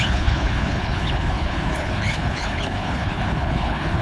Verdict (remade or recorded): remade